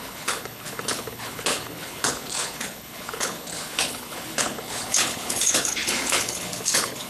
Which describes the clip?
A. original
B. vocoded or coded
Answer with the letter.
B